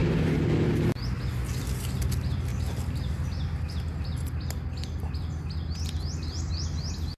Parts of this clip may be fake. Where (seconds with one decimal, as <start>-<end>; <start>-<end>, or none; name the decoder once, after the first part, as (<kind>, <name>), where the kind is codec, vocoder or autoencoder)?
none